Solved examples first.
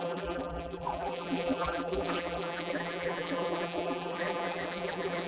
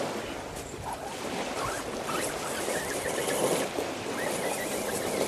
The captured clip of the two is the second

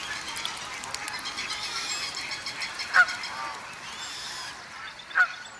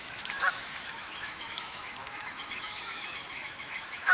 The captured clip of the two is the first